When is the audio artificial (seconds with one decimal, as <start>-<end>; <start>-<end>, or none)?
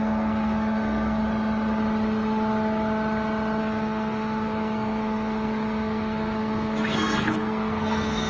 0.0-1.2; 3.6-8.3